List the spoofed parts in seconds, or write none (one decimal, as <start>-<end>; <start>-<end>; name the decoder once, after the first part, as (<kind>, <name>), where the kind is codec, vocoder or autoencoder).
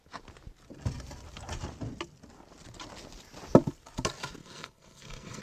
4.4-5.4 (codec, SNAC)